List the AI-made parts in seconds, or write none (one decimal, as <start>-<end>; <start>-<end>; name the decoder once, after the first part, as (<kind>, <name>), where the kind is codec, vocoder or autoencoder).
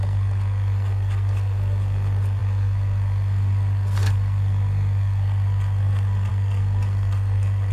0.0-7.7 (codec, SNAC)